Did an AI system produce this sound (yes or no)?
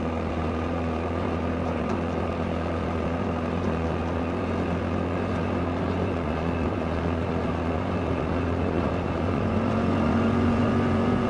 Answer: yes